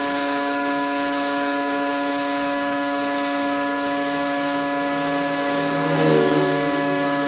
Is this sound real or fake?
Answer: fake